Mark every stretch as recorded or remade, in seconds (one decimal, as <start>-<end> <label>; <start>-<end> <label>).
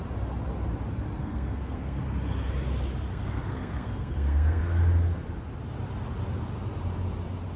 0.0-1.2 recorded; 1.2-2.0 remade; 2.0-3.1 recorded; 3.1-4.6 remade; 4.6-7.6 recorded